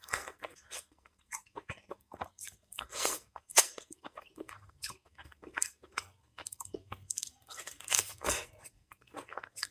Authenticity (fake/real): fake